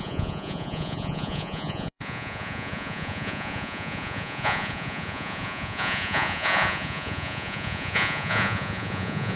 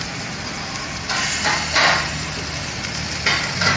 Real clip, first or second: second